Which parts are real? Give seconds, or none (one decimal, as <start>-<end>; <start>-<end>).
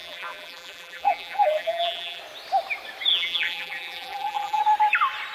2.2-3.1; 4.6-5.3